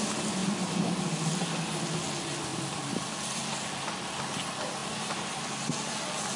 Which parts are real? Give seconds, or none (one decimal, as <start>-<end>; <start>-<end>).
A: 0.0-2.5; 3.7-4.8; 6.0-6.4